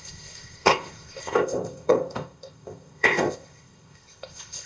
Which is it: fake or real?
fake